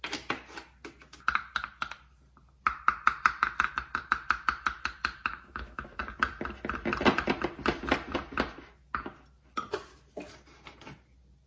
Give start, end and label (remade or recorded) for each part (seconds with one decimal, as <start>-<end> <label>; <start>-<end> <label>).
0.0-5.3 recorded; 5.3-6.0 remade; 6.0-11.5 recorded